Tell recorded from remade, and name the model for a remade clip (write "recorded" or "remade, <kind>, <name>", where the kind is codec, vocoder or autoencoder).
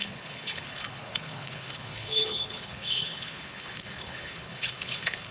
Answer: remade, codec, HILCodec